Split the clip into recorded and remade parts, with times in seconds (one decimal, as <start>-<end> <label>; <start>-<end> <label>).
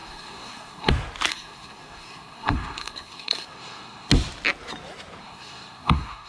0.0-0.9 remade; 0.9-1.3 recorded; 1.3-4.1 remade; 4.1-5.2 recorded; 5.2-6.3 remade